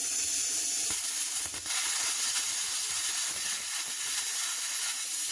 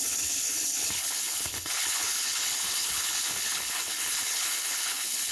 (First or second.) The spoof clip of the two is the second